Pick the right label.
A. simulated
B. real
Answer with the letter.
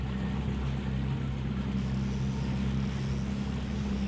B